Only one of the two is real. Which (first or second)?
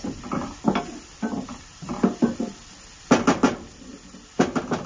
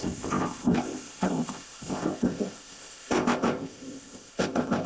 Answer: first